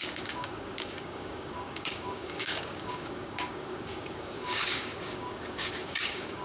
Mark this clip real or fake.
fake